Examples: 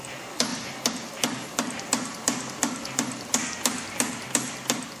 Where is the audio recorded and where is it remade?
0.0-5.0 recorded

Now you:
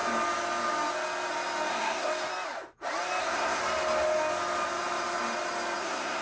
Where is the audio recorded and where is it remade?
0.0-1.7 recorded; 1.7-2.1 remade; 2.1-3.2 recorded; 3.2-3.6 remade; 3.6-5.8 recorded; 5.8-6.2 remade

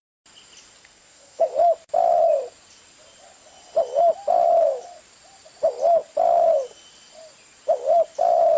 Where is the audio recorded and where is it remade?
0.0-0.8 recorded; 0.8-1.5 remade; 1.5-8.6 recorded